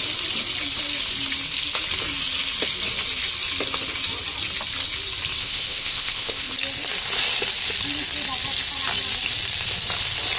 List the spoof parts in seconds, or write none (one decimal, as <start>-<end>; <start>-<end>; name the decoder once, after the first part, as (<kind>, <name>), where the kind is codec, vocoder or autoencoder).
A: 5.4-6.5 (codec, ZipCodec)